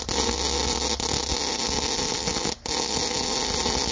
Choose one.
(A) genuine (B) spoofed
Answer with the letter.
A